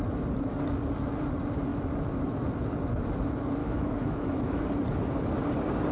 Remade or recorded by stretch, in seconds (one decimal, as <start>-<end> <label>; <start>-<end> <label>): 0.0-3.6 recorded; 3.6-4.6 remade; 4.6-5.9 recorded